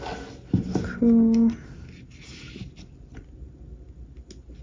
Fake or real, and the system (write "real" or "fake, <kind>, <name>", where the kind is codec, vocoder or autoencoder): real